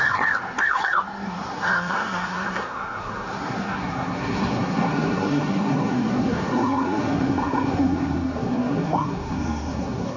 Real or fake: fake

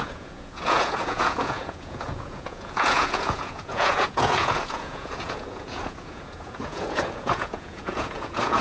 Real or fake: fake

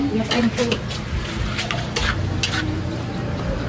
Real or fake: real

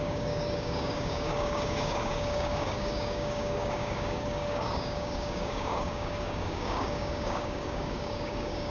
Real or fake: fake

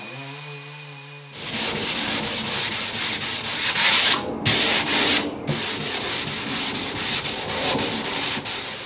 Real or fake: real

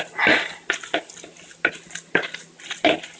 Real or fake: real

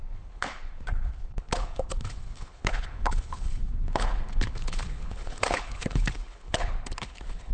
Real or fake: fake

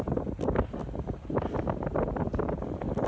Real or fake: real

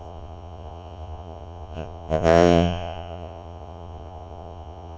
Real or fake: fake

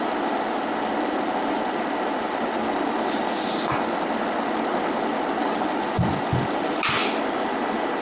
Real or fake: real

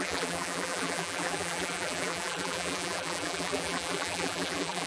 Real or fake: fake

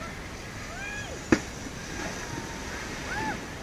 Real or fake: real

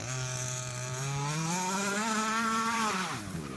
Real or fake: fake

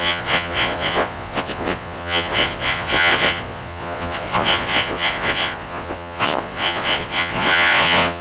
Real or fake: fake